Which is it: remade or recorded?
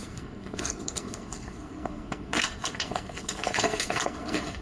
remade